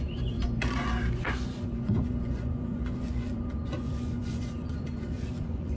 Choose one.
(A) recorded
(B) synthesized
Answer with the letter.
B